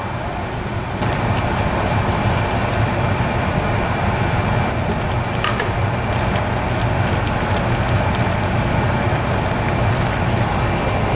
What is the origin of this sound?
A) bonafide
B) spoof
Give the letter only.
A